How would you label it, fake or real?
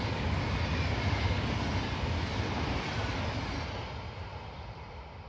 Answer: real